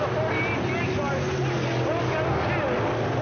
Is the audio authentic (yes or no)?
yes